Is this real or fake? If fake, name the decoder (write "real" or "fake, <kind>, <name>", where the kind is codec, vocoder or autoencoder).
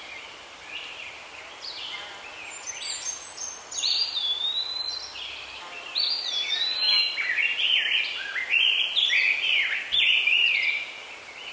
fake, vocoder, BigVGAN v2